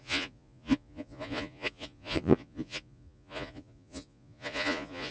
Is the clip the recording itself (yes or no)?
no